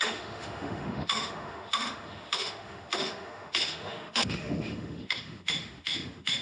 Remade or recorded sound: remade